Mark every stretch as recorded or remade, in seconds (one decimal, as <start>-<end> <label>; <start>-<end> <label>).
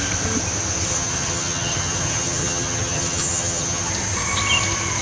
0.0-0.9 recorded; 0.9-3.9 remade; 3.9-5.0 recorded